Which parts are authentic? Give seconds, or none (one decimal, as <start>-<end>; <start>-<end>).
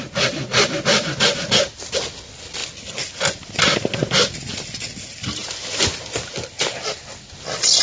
0.0-7.8